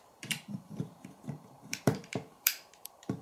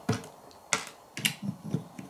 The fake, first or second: first